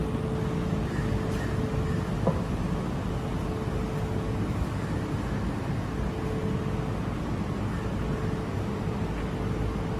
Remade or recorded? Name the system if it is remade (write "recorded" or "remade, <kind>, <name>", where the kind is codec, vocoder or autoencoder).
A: recorded